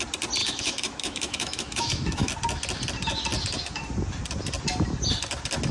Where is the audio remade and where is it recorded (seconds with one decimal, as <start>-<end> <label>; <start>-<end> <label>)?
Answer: 0.0-0.4 recorded; 0.4-2.3 remade; 2.3-5.7 recorded